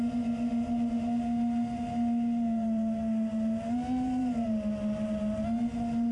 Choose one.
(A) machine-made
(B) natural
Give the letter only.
B